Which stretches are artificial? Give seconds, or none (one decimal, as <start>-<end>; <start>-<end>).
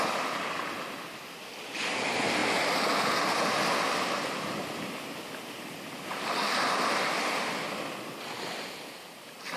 none